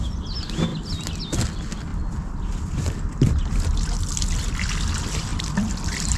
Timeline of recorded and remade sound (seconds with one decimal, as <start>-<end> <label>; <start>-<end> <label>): 0.0-0.7 recorded; 0.7-1.2 remade; 1.2-1.9 recorded; 1.9-2.7 remade; 2.7-5.3 recorded; 5.3-6.2 remade